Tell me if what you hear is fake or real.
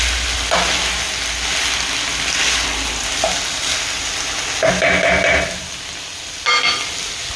real